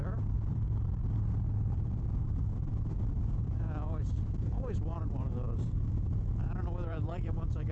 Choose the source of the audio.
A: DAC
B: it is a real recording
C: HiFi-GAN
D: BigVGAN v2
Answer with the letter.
D